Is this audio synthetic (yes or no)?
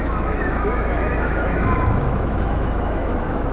yes